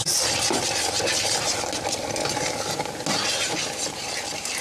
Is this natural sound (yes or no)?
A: yes